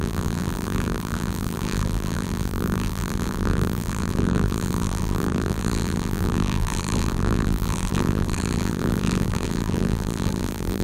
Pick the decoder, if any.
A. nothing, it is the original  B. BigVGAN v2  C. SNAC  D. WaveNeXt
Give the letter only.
B